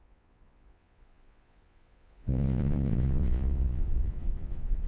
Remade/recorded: remade